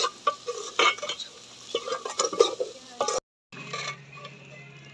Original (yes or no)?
yes